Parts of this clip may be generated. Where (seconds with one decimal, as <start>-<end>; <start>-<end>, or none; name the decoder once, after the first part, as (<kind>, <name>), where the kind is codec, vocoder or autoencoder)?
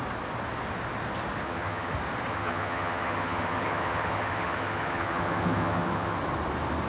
1.4-1.9 (vocoder, HiFi-GAN); 2.3-6.2